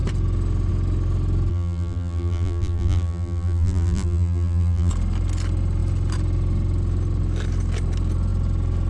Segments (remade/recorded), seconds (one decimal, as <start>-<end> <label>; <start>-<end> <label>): 0.0-1.5 recorded; 1.5-4.9 remade; 4.9-8.9 recorded